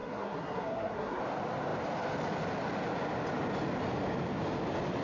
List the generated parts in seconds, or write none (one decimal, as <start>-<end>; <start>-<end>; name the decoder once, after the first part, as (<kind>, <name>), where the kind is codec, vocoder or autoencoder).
0.0-1.2 (codec, SNAC)